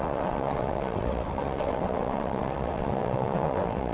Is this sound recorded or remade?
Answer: remade